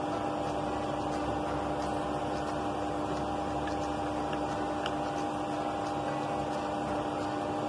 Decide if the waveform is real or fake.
real